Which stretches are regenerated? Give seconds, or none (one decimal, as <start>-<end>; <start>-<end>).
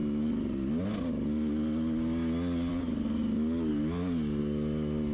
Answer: none